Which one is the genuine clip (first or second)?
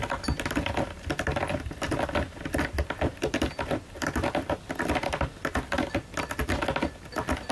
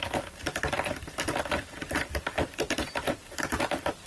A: first